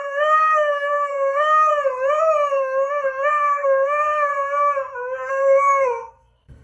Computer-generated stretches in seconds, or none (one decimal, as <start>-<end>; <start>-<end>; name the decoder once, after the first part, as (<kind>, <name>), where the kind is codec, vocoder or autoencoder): 0.0-1.7 (codec, SNAC); 2.5-4.3; 5.3-6.6